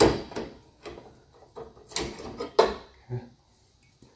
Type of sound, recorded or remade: recorded